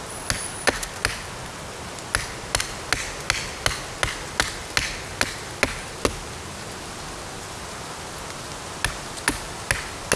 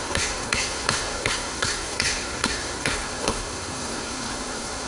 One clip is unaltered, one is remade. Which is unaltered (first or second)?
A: first